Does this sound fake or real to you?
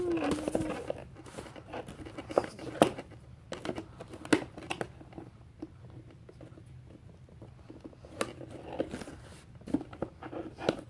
real